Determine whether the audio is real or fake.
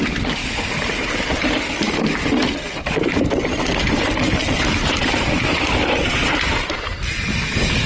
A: real